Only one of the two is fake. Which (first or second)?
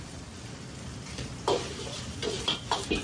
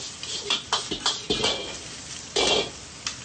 first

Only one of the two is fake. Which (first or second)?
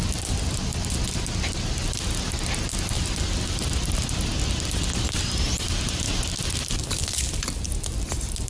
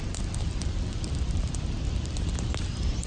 second